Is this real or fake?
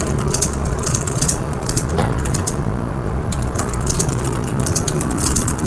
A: fake